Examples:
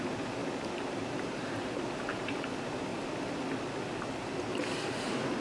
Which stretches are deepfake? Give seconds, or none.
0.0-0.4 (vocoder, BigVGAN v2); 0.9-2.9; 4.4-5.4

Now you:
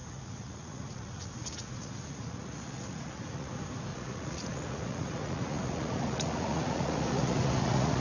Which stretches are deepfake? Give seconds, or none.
0.0-3.5 (vocoder, Vocos); 3.9-8.0

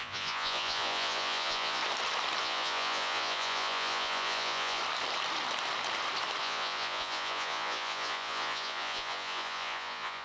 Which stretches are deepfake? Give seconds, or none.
0.0-1.8 (vocoder, Vocos); 2.4-4.8; 6.4-10.2

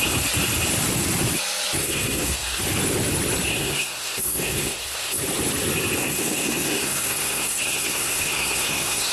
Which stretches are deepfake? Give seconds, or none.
1.8-2.6 (codec, SNAC); 3.5-5.2; 6.0-9.1

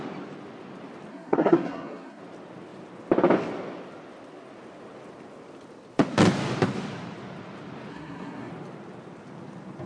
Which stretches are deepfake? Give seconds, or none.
1.1-2.2 (codec, SNAC); 7.9-8.5

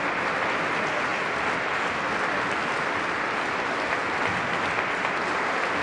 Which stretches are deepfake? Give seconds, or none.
none

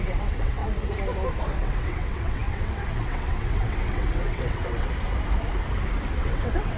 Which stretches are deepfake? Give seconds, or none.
0.0-0.6 (vocoder, WaveNeXt); 1.4-4.9; 6.2-6.8

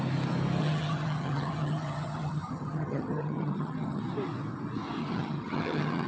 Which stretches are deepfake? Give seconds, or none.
0.6-4.0 (vocoder, HiFi-GAN); 5.0-6.1